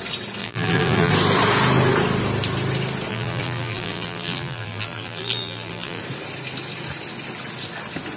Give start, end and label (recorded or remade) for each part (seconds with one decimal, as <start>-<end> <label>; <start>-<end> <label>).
0.0-0.4 recorded; 0.4-1.1 remade; 1.1-3.1 recorded; 3.1-6.0 remade; 6.0-8.2 recorded